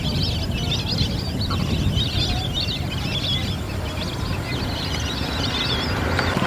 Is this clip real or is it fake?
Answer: real